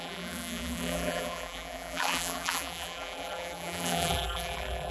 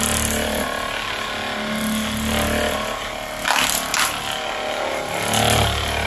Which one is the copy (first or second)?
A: first